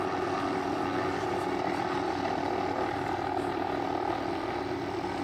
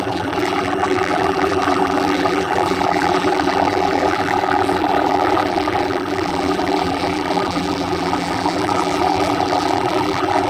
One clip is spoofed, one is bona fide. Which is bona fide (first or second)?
first